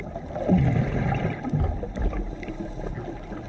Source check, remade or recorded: recorded